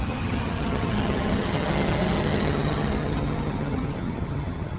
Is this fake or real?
fake